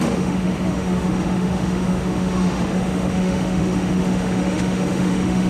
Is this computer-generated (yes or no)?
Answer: yes